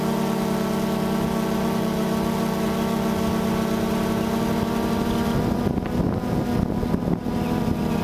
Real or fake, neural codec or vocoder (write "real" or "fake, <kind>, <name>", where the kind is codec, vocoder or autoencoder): real